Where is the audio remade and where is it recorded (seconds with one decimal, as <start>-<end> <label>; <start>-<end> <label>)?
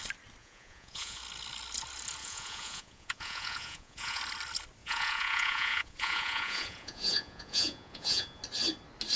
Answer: 0.0-0.4 recorded; 0.4-1.2 remade; 1.2-2.2 recorded; 2.2-4.2 remade; 4.2-4.8 recorded; 4.8-8.4 remade; 8.4-9.2 recorded